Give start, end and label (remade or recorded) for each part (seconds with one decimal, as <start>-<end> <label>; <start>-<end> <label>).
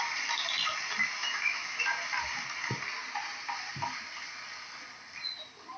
0.0-1.2 recorded; 1.2-1.8 remade; 1.8-5.8 recorded